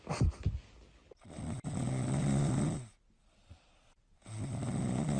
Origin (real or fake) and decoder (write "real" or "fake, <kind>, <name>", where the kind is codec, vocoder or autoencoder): real